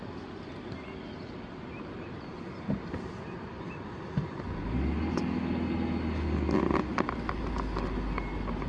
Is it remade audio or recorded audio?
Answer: recorded